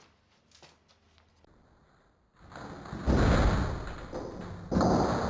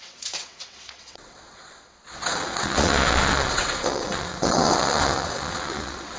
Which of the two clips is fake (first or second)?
second